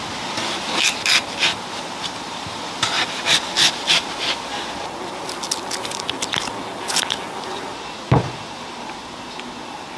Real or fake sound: real